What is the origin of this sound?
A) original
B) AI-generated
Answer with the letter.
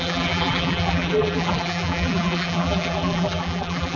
B